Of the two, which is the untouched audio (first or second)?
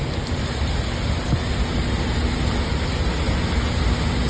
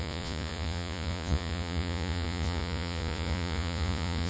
first